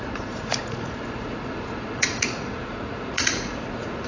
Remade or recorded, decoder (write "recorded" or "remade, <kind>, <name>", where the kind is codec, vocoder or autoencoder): remade, vocoder, Vocos